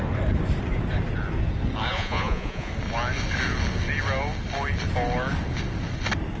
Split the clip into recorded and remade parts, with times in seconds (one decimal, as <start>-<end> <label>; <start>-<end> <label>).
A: 0.0-1.9 recorded; 1.9-2.7 remade; 2.7-6.4 recorded